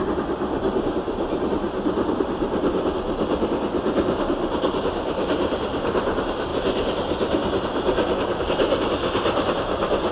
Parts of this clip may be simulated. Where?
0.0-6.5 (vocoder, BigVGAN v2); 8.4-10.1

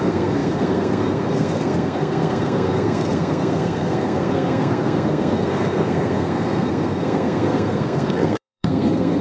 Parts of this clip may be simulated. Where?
0.0-9.2 (codec, SNAC)

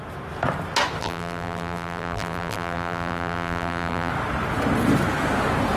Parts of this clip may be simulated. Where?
1.0-4.1 (vocoder, BigVGAN v2)

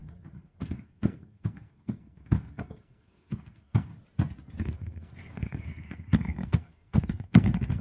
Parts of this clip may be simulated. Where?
0.0-3.9 (codec, SNAC); 4.6-7.8

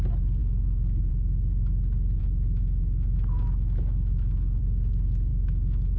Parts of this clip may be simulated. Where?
0.4-1.1 (autoencoder, DAC-VAE); 2.2-4.6; 5.3-6.0

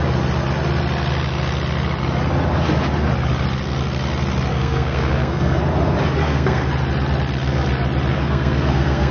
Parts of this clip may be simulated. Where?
4.5-5.6 (codec, SNAC); 6.2-6.7; 8.1-9.1

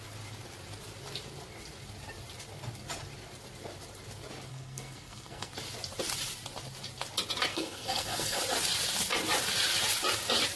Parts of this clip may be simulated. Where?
4.5-5.5 (codec, SNAC); 7.5-8.4

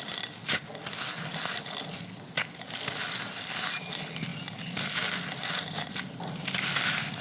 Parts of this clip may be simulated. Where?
none